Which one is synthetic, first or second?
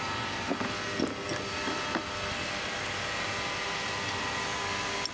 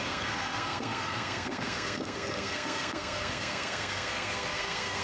second